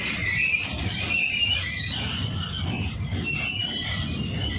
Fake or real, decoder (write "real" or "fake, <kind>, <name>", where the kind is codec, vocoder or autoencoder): real